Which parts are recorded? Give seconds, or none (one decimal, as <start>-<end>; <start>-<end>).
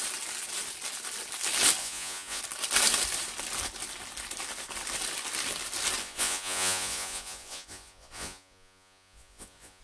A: 0.0-1.8; 2.4-6.0